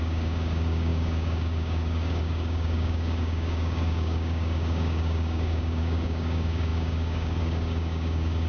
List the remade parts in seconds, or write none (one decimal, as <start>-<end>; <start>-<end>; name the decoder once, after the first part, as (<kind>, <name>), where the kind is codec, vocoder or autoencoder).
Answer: 0.0-8.5 (codec, DAC)